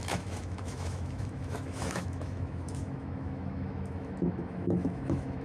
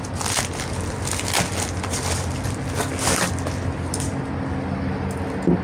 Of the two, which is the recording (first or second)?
second